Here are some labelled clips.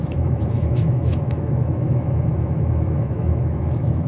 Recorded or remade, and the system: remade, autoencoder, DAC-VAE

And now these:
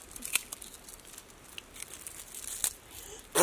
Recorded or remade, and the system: recorded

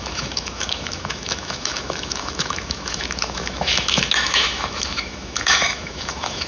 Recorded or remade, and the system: remade, autoencoder, DAC-VAE